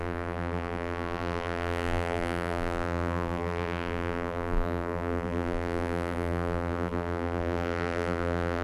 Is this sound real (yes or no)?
no